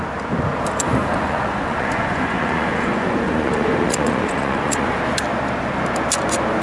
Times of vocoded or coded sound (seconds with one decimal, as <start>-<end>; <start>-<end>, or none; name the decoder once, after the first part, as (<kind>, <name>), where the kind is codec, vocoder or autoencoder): 1.0-5.0 (vocoder, Vocos)